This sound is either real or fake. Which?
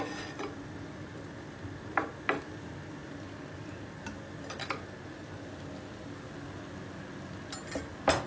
real